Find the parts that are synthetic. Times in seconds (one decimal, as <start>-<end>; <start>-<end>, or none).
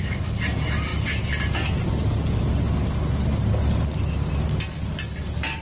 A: none